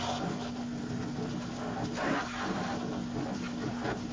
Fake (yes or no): no